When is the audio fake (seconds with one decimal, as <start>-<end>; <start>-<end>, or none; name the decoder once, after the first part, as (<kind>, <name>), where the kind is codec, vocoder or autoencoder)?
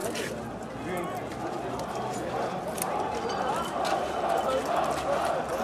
none